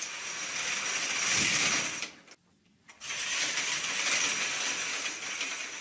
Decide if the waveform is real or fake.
real